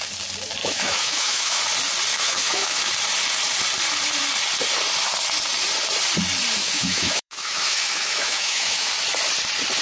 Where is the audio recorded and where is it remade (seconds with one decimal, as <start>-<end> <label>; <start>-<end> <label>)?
0.0-0.6 recorded; 0.6-1.6 remade; 1.6-2.1 recorded; 2.1-2.9 remade; 2.9-6.6 recorded; 6.6-8.9 remade; 8.9-9.8 recorded